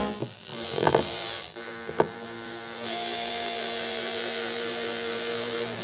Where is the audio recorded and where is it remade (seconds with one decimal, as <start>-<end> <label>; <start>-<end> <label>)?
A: 0.0-5.8 remade